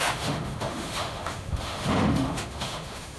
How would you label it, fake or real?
fake